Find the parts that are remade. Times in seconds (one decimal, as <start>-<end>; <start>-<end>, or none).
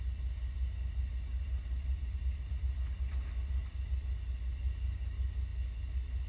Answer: none